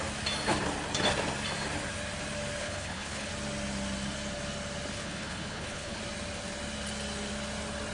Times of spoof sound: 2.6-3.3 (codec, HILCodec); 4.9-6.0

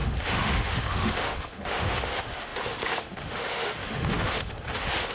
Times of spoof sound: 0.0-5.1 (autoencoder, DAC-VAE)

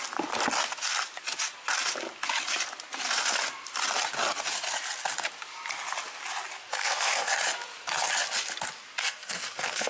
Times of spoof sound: 6.7-7.3 (codec, SNAC); 9.0-9.9

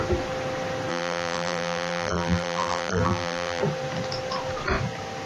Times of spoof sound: 0.9-3.6 (vocoder, BigVGAN v2)